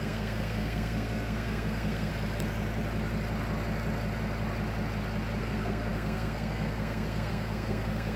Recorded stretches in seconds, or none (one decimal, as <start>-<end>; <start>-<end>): 2.1-5.4